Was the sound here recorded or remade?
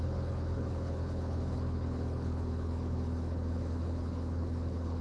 remade